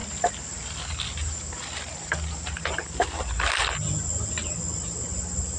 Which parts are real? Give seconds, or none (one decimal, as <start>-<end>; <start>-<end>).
0.0-5.6